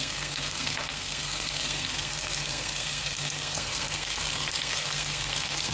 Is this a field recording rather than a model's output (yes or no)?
no